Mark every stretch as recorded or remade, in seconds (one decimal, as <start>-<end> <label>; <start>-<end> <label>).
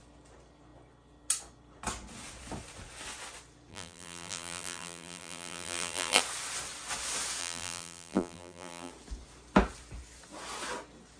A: 0.0-3.7 recorded; 3.7-6.2 remade; 6.2-7.4 recorded; 7.4-8.9 remade; 8.9-11.2 recorded